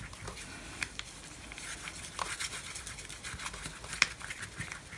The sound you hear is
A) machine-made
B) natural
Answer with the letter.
B